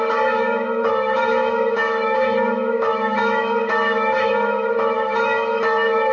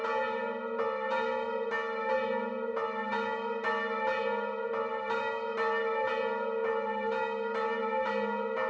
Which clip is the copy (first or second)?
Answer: first